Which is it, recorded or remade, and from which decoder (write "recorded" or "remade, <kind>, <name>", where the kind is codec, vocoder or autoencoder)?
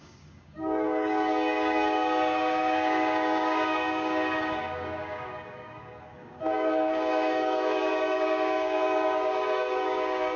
remade, codec, DAC